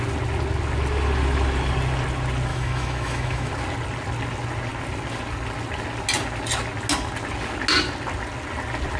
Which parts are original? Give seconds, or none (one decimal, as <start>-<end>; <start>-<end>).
0.0-2.5; 3.5-9.0